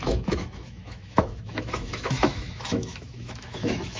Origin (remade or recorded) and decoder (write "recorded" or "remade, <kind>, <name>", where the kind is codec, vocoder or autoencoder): remade, autoencoder, DAC-VAE